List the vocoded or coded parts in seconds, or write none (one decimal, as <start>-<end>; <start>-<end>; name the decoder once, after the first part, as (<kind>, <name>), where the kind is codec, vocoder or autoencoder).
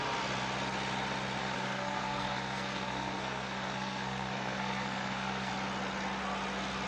1.4-5.5 (codec, SNAC)